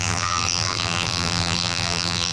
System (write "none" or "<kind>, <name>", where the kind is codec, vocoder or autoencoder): vocoder, BigVGAN v2